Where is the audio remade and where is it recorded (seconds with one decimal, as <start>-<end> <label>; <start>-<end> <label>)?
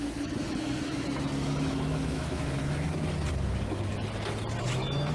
0.0-2.6 remade; 2.6-3.3 recorded; 3.3-3.9 remade; 3.9-4.6 recorded; 4.6-5.1 remade